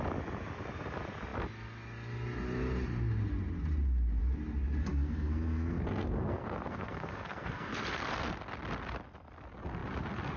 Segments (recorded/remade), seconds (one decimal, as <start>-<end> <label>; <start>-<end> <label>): 0.0-4.8 recorded; 4.8-8.1 remade; 8.1-10.4 recorded